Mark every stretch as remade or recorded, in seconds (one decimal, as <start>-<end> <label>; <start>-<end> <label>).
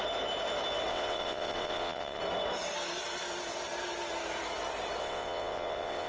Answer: 0.0-0.9 recorded; 0.9-2.2 remade; 2.2-5.0 recorded; 5.0-6.1 remade